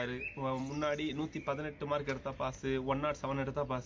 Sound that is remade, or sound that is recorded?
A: recorded